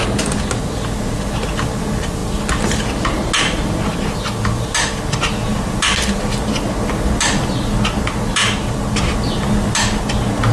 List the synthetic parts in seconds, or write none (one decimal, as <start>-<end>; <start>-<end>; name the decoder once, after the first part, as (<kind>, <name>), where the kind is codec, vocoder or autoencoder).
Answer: none